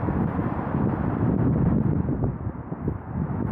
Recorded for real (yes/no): yes